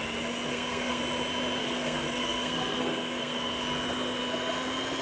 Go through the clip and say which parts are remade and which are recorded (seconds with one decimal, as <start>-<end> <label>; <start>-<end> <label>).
0.0-0.5 recorded; 0.5-1.0 remade; 1.0-1.6 recorded; 1.6-3.5 remade; 3.5-5.0 recorded